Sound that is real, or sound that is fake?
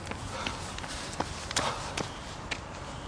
real